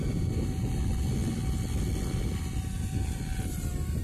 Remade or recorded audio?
recorded